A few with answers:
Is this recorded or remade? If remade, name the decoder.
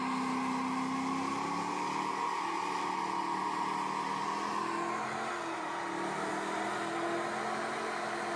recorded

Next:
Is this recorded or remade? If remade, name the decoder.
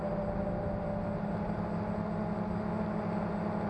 recorded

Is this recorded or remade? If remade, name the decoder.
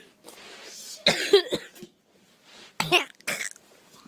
recorded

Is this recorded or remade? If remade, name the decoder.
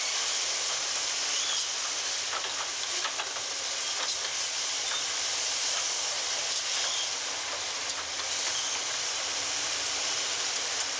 remade, vocoder, BigVGAN v2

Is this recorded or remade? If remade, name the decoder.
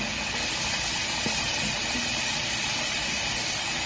remade, vocoder, BigVGAN v2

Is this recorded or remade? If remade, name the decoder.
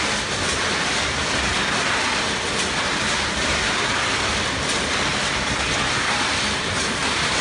remade, vocoder, BigVGAN v2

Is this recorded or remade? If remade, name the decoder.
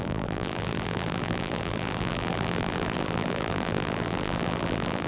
remade, vocoder, BigVGAN v2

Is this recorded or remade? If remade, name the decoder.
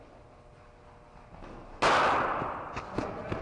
recorded